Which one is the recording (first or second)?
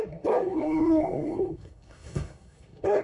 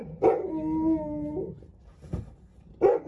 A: second